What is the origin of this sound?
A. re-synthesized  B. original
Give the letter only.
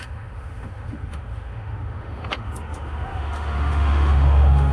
A